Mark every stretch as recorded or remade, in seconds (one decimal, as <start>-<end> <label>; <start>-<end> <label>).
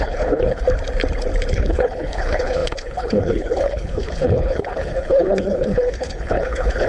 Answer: 0.0-0.6 remade; 0.6-1.5 recorded; 1.5-6.9 remade